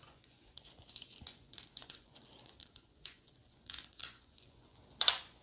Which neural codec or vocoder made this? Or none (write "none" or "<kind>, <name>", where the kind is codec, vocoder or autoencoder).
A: vocoder, Vocos